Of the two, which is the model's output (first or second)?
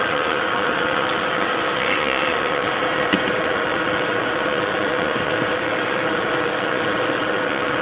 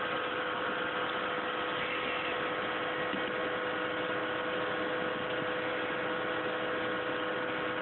first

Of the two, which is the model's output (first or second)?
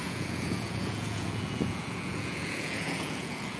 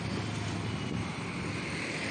first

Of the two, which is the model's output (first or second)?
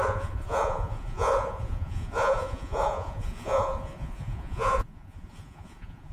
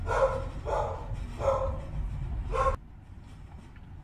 first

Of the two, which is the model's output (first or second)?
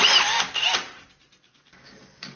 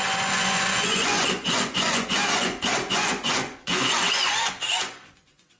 second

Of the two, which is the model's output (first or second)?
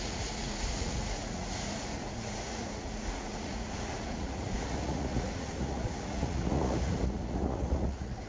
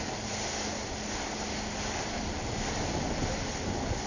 first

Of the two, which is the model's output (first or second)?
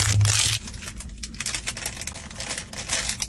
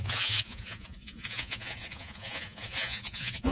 second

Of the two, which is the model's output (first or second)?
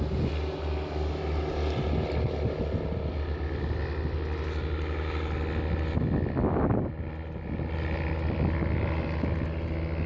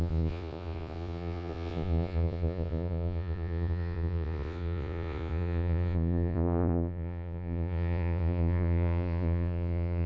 second